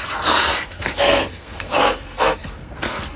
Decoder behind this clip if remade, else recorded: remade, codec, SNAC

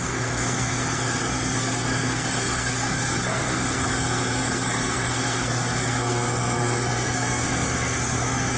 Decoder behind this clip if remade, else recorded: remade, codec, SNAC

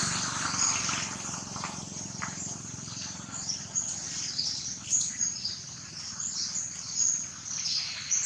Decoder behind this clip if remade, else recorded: recorded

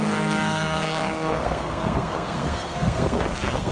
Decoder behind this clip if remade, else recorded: remade, codec, SNAC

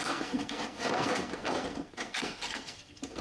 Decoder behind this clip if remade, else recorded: remade, codec, SNAC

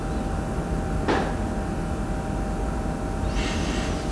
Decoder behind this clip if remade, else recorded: recorded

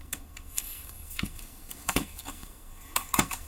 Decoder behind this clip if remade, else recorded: remade, codec, SNAC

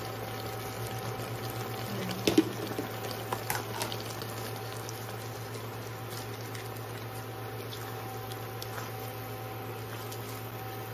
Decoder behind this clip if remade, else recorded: recorded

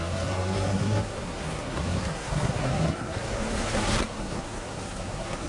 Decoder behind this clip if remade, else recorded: remade, codec, SNAC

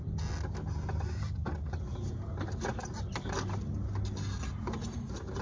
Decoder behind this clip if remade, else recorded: recorded